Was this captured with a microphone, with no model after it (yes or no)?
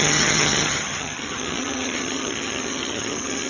no